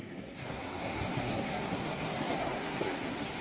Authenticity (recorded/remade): remade